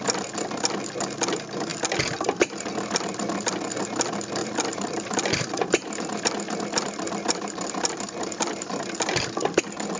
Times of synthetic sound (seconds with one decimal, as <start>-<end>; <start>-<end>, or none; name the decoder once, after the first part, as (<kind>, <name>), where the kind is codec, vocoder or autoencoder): 1.7-3.7 (vocoder, BigVGAN v2); 4.4-9.6